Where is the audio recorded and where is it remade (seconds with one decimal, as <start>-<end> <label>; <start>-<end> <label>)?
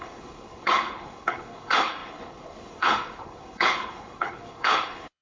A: 0.0-5.2 remade